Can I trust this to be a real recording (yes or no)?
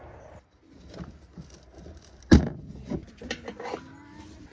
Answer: yes